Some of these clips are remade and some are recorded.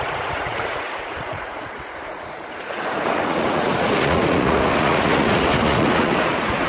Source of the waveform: remade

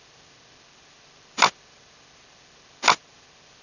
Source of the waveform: recorded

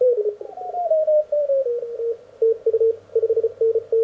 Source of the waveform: recorded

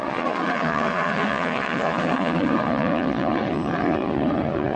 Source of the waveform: remade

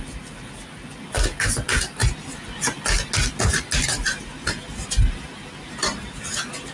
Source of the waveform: recorded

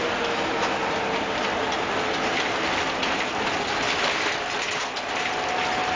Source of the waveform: recorded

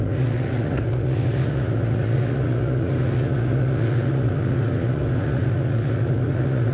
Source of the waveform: remade